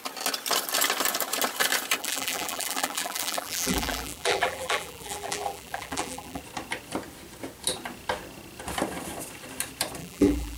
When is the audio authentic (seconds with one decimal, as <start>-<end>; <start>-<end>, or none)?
0.0-2.0; 6.4-10.0